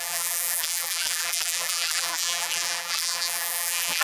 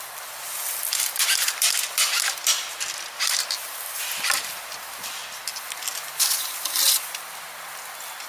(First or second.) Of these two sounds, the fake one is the first